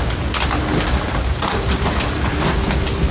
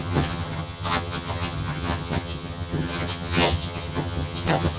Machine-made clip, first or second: second